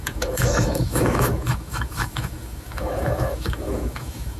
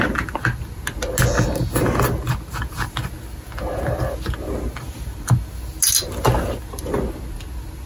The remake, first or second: first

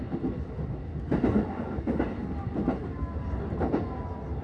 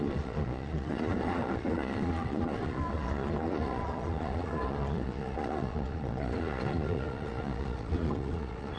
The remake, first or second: second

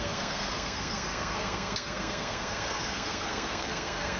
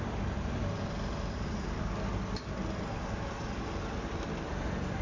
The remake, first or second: first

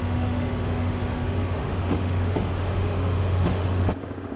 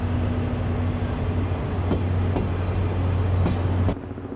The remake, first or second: first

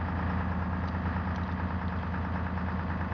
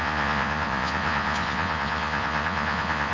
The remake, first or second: second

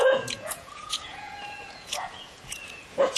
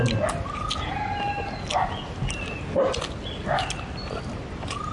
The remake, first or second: first